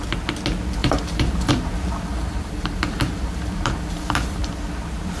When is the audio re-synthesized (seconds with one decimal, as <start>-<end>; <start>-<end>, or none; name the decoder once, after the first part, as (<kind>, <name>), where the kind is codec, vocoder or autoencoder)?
0.8-1.5 (vocoder, BigVGAN v2); 2.1-4.5

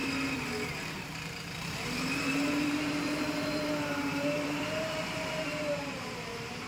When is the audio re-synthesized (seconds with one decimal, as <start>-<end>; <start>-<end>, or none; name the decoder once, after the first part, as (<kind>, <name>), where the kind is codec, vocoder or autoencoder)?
0.7-6.7 (vocoder, BigVGAN v2)